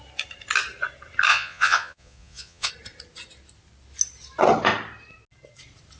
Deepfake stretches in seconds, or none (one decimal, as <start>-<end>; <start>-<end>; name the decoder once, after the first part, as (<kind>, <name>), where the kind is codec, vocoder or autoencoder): 1.3-2.7 (vocoder, Vocos)